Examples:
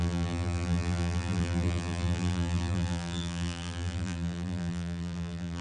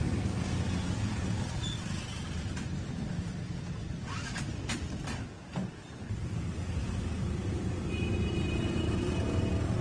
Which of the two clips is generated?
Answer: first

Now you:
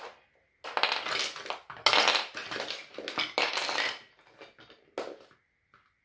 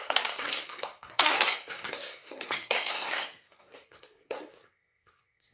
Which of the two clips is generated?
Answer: second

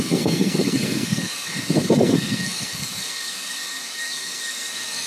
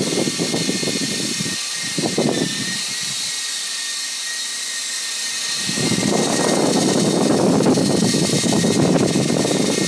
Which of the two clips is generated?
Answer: first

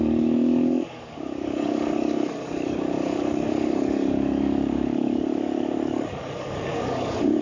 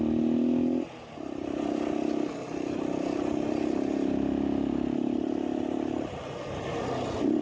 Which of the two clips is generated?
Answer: first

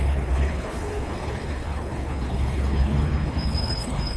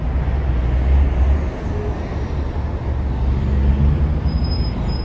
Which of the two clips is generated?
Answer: first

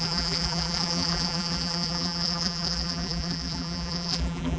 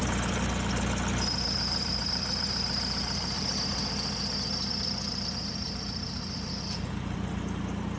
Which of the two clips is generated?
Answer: first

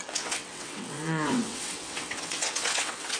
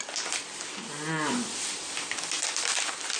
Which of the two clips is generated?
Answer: first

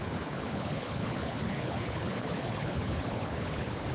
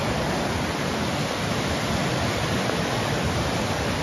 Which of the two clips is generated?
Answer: first